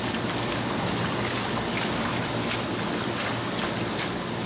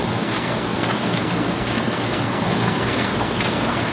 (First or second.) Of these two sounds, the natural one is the first